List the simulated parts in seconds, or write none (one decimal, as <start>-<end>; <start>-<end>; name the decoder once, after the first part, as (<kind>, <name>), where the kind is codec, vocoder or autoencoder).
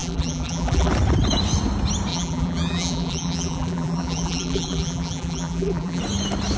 0.0-0.9 (vocoder, BigVGAN v2); 2.1-6.0